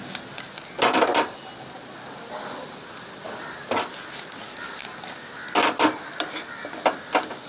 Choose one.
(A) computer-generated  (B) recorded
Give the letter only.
B